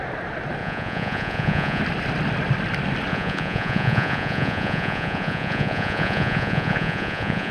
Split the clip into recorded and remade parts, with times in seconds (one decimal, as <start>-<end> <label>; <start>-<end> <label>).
0.0-0.6 recorded; 0.6-1.8 remade; 1.8-3.1 recorded; 3.1-7.5 remade